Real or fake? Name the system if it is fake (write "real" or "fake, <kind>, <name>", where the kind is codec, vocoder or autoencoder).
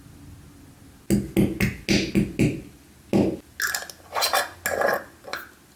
real